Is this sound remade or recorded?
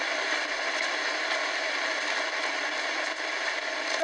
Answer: recorded